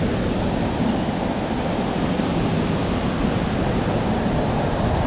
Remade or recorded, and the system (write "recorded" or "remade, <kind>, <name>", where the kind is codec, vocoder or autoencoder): recorded